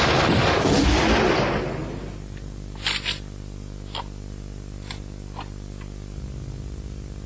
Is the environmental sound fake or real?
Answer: real